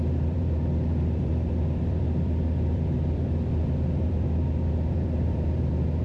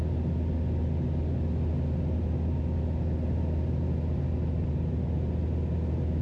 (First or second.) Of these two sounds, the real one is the second